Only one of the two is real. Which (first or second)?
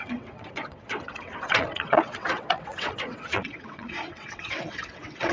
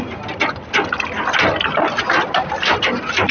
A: second